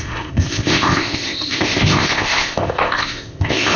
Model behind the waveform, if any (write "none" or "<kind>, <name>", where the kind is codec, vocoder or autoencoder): codec, ZipCodec